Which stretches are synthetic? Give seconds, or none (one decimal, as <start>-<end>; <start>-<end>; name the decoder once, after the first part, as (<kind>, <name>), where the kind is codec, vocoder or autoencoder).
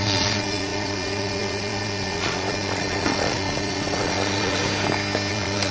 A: 0.0-4.6 (vocoder, Vocos); 5.3-5.7